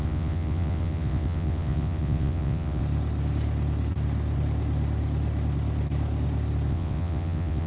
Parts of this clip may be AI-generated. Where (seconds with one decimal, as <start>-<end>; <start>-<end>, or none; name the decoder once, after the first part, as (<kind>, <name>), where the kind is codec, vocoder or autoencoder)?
0.0-2.8 (vocoder, WaveNeXt); 6.7-7.7